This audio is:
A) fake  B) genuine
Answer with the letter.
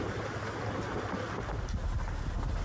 B